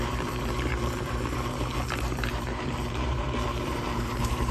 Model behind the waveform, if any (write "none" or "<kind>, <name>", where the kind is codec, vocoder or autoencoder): vocoder, BigVGAN v2